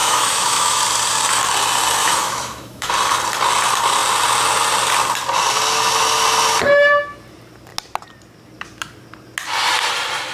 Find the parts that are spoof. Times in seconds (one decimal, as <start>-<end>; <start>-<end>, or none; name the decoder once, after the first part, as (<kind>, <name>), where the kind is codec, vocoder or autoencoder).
0.0-0.8 (autoencoder, DAC-VAE); 2.0-2.9